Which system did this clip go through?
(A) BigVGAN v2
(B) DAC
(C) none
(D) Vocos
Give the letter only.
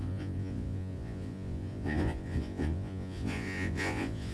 D